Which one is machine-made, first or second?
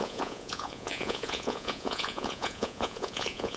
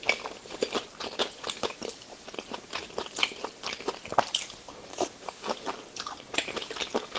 first